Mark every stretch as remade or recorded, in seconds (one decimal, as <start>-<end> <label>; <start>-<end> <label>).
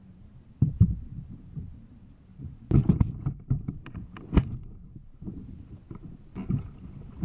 0.0-6.3 remade; 6.3-7.2 recorded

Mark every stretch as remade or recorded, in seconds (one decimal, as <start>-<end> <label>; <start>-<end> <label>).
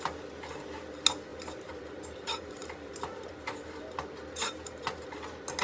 0.0-1.3 recorded; 1.3-3.8 remade; 3.8-5.6 recorded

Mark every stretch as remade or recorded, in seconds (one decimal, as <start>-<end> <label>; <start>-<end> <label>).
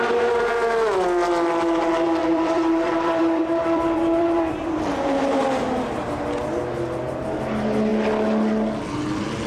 0.0-2.2 recorded; 2.2-5.4 remade; 5.4-9.5 recorded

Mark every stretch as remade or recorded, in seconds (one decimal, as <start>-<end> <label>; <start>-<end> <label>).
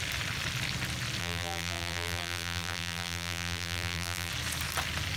0.0-1.2 recorded; 1.2-4.3 remade; 4.3-5.2 recorded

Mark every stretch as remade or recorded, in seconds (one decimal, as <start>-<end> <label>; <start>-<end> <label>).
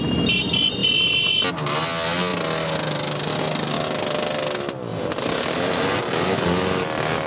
0.0-4.9 recorded; 4.9-5.8 remade; 5.8-7.3 recorded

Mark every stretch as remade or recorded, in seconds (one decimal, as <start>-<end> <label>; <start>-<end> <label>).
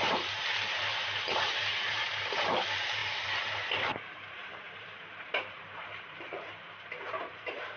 0.0-7.8 remade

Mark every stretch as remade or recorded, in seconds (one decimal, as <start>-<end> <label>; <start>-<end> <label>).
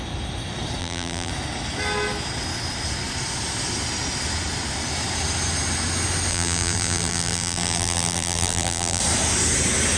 0.0-0.8 recorded; 0.8-1.3 remade; 1.3-6.3 recorded; 6.3-9.0 remade; 9.0-10.0 recorded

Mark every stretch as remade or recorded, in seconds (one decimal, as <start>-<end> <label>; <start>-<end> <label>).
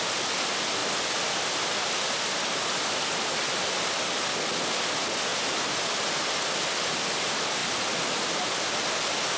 0.0-0.8 recorded; 0.8-4.0 remade; 4.0-5.3 recorded; 5.3-6.2 remade; 6.2-9.4 recorded